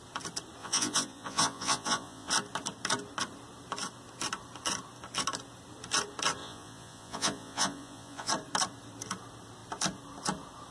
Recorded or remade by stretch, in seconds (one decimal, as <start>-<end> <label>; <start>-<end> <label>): 0.0-0.6 recorded; 0.6-2.3 remade; 2.3-6.4 recorded; 6.4-8.3 remade; 8.3-10.7 recorded